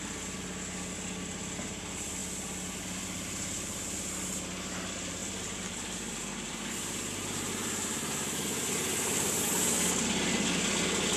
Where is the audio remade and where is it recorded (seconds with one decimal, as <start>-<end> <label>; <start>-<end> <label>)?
0.0-2.2 recorded; 2.2-2.8 remade; 2.8-5.2 recorded; 5.2-7.1 remade; 7.1-11.2 recorded